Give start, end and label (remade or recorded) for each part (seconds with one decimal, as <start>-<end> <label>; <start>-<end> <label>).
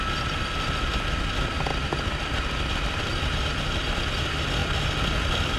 0.0-5.6 recorded